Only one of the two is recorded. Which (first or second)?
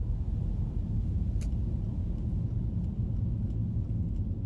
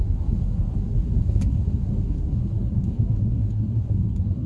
first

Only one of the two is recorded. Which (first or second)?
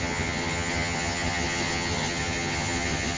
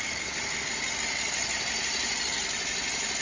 second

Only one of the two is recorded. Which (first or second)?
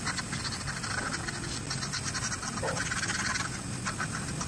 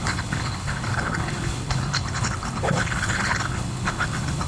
first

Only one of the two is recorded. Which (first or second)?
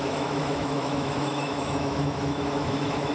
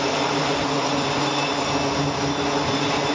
second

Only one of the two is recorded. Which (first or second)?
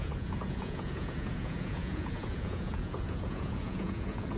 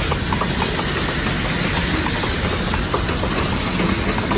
second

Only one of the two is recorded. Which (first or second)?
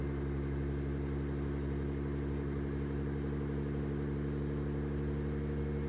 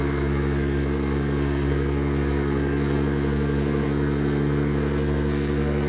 first